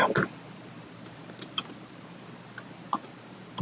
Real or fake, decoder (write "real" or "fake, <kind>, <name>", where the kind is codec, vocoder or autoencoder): real